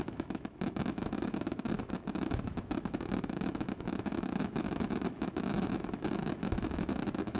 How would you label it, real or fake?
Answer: fake